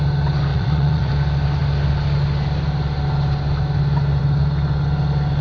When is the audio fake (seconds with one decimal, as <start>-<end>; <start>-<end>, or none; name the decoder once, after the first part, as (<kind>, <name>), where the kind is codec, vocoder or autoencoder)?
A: 0.5-1.1 (vocoder, Vocos)